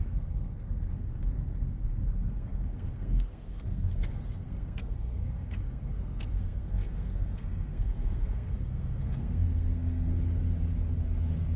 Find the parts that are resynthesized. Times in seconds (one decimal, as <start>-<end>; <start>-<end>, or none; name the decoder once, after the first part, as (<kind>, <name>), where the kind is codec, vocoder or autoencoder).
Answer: 0.0-10.1 (codec, SNAC)